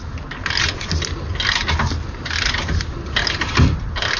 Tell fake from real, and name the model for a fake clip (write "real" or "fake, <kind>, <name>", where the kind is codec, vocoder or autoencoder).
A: real